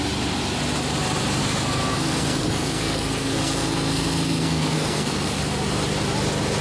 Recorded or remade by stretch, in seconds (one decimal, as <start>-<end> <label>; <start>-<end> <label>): 0.0-1.4 recorded; 1.4-5.4 remade; 5.4-6.6 recorded